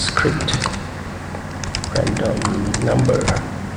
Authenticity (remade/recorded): recorded